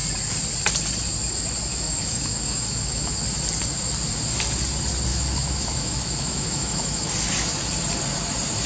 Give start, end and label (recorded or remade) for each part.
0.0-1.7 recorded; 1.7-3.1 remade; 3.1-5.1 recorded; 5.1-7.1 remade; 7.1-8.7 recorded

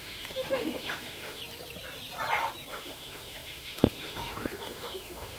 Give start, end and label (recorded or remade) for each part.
0.0-1.4 remade; 1.4-2.7 recorded; 2.7-5.4 remade

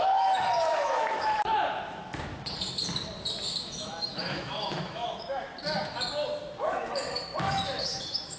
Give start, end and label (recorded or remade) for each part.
0.0-2.3 remade; 2.3-3.6 recorded; 3.6-5.5 remade; 5.5-6.6 recorded; 6.6-8.4 remade

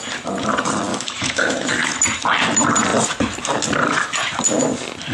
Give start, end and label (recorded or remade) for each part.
0.0-0.9 recorded; 0.9-1.7 remade; 1.7-5.1 recorded

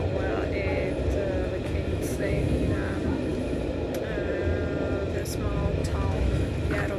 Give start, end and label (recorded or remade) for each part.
0.0-1.9 recorded; 1.9-2.7 remade; 2.7-5.8 recorded; 5.8-6.5 remade; 6.5-7.0 recorded